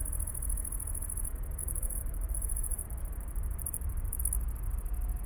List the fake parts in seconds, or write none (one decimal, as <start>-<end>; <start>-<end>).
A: 1.6-4.2